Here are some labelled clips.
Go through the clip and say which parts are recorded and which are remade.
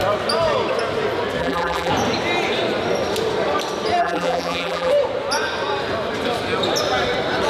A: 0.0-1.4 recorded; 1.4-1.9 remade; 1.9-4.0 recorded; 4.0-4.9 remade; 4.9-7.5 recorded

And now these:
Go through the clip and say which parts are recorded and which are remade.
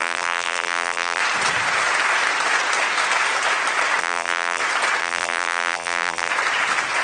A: 0.0-1.2 remade; 1.2-4.0 recorded; 4.0-4.6 remade; 4.6-5.0 recorded; 5.0-6.3 remade; 6.3-7.0 recorded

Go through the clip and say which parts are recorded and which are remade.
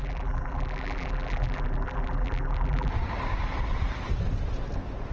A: 0.0-2.9 remade; 2.9-5.1 recorded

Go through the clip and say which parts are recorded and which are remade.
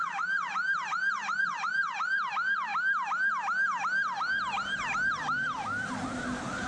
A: 0.0-1.4 recorded; 1.4-2.7 remade; 2.7-5.1 recorded; 5.1-6.7 remade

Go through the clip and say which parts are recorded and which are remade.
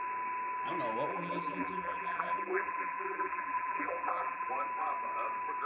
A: 0.0-1.1 recorded; 1.1-4.5 remade; 4.5-5.7 recorded